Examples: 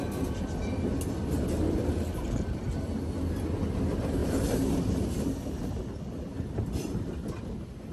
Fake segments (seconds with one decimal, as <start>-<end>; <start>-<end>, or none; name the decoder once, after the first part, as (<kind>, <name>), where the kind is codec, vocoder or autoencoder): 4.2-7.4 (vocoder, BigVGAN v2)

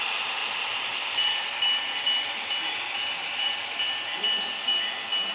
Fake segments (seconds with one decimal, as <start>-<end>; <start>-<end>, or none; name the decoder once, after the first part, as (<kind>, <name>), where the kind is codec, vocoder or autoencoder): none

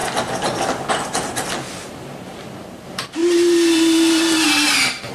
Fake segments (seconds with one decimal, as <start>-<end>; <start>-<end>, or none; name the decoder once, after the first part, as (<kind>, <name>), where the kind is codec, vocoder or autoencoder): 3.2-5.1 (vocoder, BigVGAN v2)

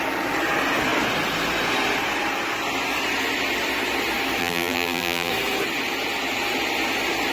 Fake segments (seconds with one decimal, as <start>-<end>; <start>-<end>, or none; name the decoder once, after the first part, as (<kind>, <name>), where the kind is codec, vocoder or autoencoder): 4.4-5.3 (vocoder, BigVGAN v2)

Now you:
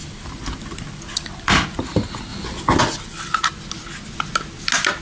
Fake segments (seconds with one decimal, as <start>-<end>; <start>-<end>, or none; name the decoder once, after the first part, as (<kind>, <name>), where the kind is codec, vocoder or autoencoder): 0.0-1.8 (vocoder, BigVGAN v2); 2.3-2.8

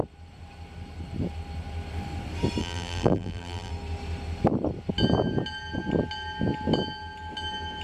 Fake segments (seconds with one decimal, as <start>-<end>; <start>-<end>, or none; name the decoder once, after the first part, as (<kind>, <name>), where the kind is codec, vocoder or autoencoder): 2.6-3.7 (vocoder, BigVGAN v2)